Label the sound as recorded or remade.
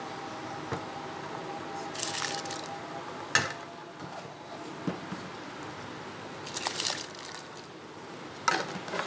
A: recorded